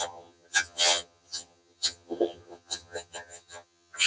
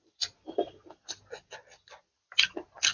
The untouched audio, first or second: second